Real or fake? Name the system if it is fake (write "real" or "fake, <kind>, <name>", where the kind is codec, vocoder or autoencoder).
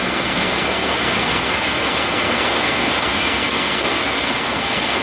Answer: fake, codec, SNAC